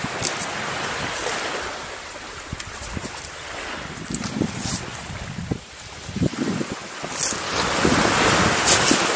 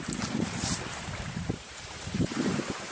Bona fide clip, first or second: first